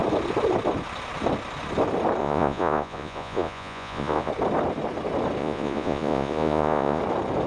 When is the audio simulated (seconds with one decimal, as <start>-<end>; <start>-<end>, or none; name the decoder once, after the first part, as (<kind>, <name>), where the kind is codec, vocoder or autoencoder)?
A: 2.2-4.3 (vocoder, Vocos); 5.4-7.0